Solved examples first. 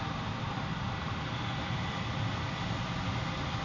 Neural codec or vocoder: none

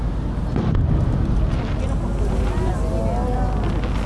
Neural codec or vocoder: none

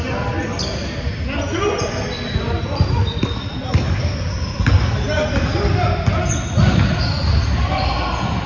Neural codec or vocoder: none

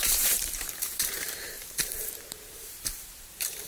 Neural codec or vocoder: vocoder, BigVGAN v2